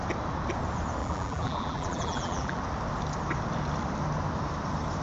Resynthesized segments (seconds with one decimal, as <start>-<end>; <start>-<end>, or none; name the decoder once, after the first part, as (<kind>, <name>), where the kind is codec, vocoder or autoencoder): 1.0-2.6 (vocoder, BigVGAN v2)